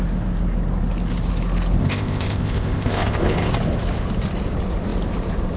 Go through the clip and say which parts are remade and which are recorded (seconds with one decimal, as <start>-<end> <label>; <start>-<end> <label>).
0.0-1.8 recorded; 1.8-3.5 remade; 3.5-5.6 recorded